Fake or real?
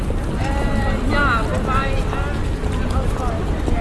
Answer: real